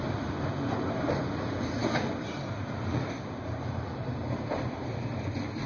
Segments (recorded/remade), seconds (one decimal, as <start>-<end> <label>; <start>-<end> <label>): 0.0-5.7 remade